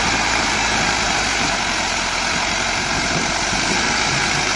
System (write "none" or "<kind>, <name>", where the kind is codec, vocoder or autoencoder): vocoder, BigVGAN v2